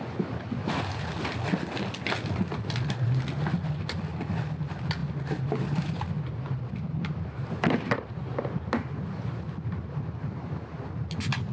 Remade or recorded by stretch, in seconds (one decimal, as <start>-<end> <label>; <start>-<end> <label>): 0.0-11.5 recorded